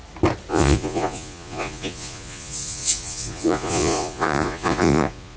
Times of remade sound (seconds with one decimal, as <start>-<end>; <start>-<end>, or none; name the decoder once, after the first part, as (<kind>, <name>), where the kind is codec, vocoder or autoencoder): 0.5-5.4 (vocoder, Vocos)